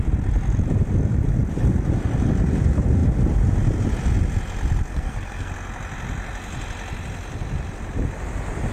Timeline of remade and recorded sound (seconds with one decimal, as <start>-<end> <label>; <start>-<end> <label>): 0.0-4.9 recorded; 4.9-5.5 remade; 5.5-8.7 recorded